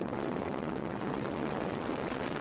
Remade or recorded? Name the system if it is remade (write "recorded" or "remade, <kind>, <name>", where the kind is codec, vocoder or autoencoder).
remade, vocoder, WaveNeXt